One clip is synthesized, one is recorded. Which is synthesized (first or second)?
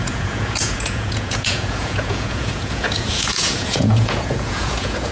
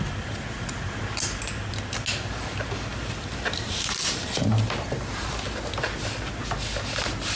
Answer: first